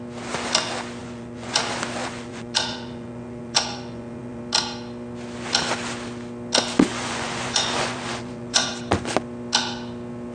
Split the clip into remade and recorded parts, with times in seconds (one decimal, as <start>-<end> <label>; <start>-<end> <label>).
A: 0.0-1.0 recorded; 1.0-1.6 remade; 1.6-2.0 recorded; 2.0-4.4 remade; 4.4-6.9 recorded; 6.9-8.7 remade; 8.7-10.3 recorded